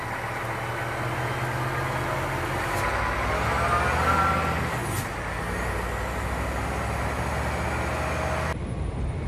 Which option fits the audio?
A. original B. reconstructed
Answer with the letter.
A